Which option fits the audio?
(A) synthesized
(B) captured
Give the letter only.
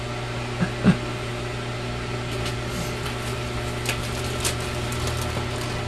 B